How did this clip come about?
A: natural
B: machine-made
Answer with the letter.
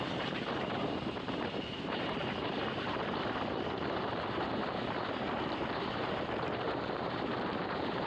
B